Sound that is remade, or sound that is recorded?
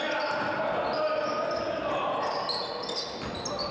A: recorded